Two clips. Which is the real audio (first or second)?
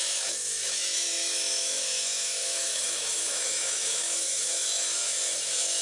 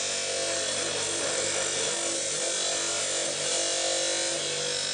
second